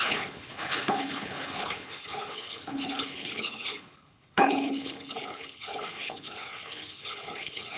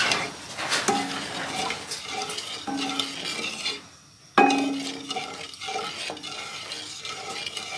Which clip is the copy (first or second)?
first